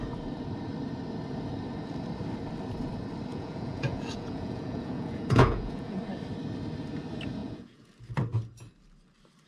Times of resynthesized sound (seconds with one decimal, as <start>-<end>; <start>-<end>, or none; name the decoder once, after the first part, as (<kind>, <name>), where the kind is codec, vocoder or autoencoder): 3.3-6.0 (vocoder, Vocos); 7.4-7.9

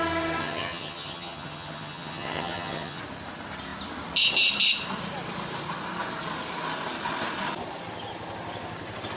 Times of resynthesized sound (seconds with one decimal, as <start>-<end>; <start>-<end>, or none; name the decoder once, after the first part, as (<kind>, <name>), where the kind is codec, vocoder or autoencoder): 0.4-3.0 (vocoder, HiFi-GAN)